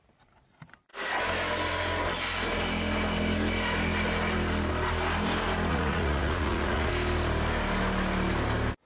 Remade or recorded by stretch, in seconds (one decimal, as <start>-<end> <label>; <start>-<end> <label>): 0.0-5.7 recorded; 5.7-6.9 remade; 6.9-8.9 recorded